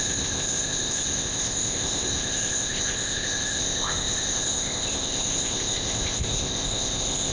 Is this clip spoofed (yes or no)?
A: yes